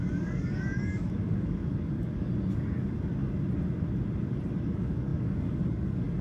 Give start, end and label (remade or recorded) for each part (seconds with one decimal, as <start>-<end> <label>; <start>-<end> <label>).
0.0-2.3 remade; 2.3-4.6 recorded; 4.6-6.2 remade